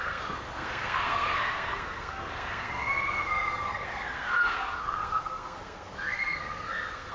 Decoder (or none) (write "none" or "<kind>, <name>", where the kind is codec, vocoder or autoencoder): codec, SNAC